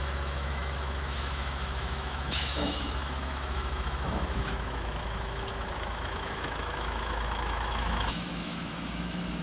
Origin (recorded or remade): remade